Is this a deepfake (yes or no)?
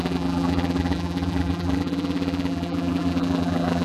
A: yes